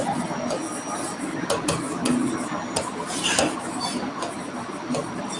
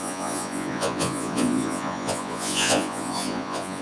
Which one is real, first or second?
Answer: first